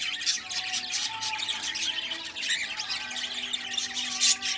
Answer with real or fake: real